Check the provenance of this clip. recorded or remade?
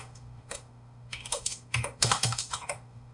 remade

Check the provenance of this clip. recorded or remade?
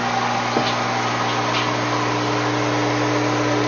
recorded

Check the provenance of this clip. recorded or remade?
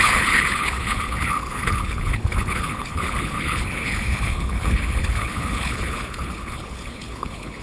remade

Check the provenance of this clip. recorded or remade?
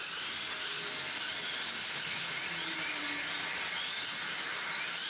recorded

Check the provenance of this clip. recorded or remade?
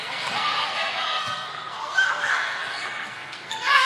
remade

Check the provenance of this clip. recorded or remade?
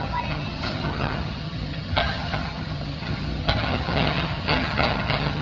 remade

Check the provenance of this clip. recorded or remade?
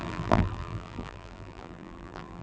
remade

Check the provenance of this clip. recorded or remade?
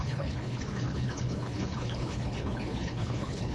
remade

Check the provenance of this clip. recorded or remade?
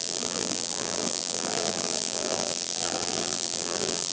remade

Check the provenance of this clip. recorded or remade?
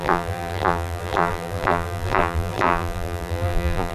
remade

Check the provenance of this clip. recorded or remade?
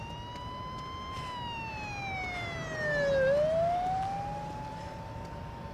recorded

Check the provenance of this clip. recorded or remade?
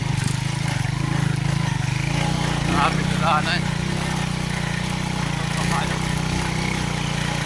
recorded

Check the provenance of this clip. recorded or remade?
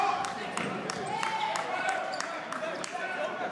remade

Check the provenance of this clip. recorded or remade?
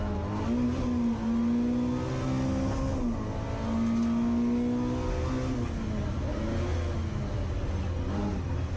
recorded